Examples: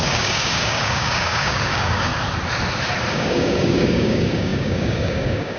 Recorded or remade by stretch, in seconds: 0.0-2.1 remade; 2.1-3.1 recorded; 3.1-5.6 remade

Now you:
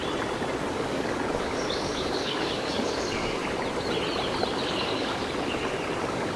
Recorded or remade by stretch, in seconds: 0.0-0.7 recorded; 0.7-3.4 remade; 3.4-4.5 recorded; 4.5-5.2 remade; 5.2-6.0 recorded; 6.0-6.4 remade